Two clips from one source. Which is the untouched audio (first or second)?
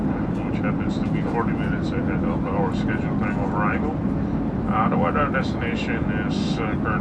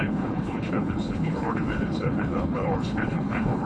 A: first